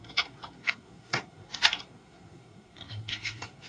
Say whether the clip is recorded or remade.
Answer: remade